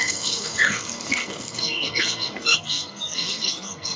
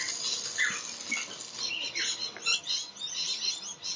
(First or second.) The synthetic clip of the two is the first